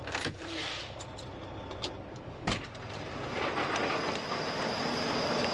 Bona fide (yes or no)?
yes